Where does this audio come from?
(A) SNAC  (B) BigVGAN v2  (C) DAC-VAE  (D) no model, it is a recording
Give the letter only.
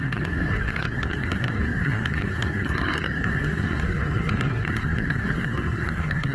A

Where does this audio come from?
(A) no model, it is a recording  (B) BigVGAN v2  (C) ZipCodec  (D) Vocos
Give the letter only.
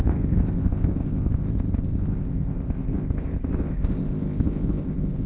C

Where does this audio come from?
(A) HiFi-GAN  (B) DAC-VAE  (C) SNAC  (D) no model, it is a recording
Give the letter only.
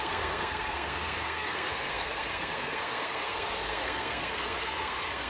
C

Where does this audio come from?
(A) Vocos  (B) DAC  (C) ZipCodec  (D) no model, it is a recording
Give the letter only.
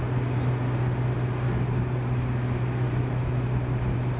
D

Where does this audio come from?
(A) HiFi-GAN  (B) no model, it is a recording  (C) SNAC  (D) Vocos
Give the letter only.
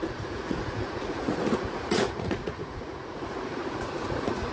D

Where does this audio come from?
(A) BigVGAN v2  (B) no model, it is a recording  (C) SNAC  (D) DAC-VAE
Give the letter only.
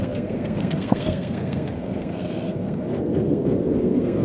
C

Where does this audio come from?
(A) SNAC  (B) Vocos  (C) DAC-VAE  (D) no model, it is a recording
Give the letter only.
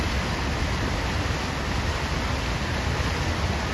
D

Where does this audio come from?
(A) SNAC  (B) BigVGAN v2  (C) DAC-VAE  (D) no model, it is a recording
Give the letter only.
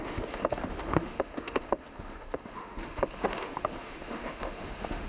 C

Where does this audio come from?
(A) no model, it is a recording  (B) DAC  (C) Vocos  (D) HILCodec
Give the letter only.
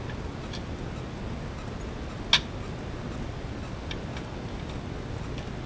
A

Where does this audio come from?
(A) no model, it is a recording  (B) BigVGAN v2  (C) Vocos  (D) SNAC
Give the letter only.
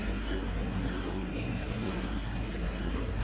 D